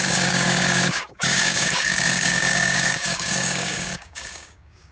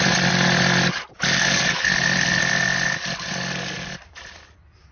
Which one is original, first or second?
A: second